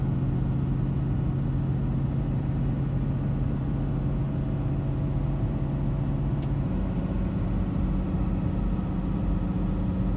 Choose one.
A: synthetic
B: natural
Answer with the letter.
B